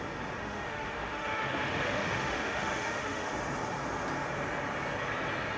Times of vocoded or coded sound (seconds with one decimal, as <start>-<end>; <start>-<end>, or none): 0.4-3.3